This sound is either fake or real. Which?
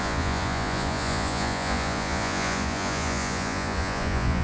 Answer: fake